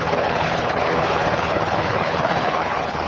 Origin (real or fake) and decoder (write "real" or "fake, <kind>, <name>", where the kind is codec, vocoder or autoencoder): fake, codec, HILCodec